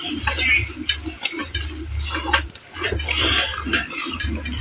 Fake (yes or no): no